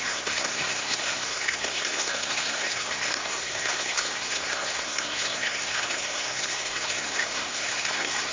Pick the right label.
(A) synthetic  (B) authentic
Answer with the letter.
A